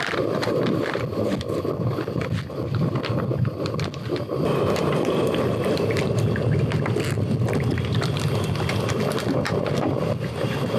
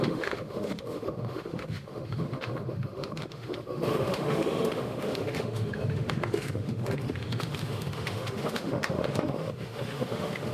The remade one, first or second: second